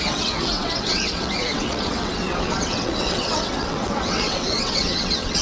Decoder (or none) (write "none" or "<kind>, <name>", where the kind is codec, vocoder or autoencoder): vocoder, WaveNeXt